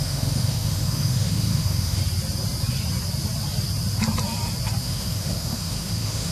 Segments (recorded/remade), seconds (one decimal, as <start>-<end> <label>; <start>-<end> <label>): 0.0-2.0 remade; 2.0-4.8 recorded; 4.8-6.3 remade